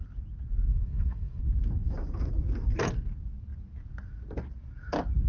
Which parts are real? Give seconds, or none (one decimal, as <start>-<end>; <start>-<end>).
0.0-0.7; 1.4-5.3